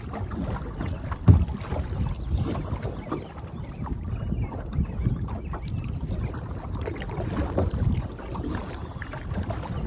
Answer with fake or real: real